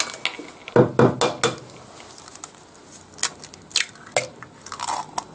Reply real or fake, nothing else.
real